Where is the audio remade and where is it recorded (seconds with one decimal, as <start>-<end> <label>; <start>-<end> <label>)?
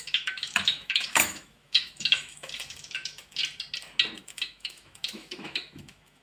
0.0-3.4 remade; 3.4-4.2 recorded; 4.2-6.2 remade